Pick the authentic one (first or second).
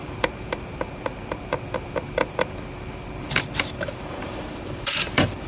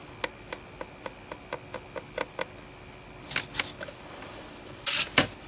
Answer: second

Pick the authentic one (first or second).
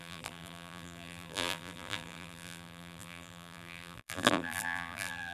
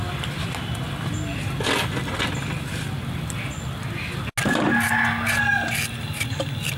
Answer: second